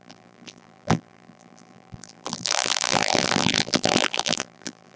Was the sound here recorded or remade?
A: remade